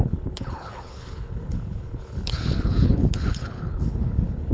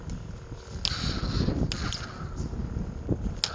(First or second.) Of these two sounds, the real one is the second